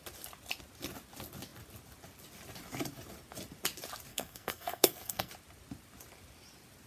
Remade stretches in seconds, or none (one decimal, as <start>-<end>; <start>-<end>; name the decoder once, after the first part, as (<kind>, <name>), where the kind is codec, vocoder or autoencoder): 4.1-5.3 (codec, SNAC)